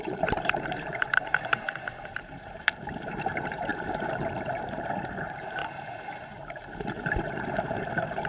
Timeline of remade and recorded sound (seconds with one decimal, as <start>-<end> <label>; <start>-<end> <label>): 0.0-8.3 remade